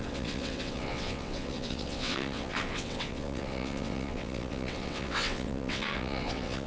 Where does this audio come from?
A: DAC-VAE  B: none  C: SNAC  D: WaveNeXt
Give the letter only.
D